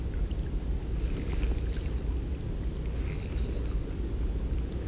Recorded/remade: recorded